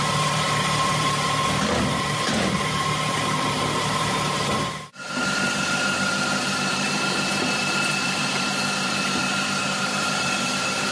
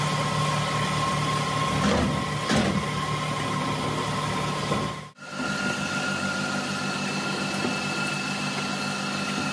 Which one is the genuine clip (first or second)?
second